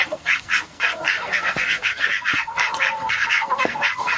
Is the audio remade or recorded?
remade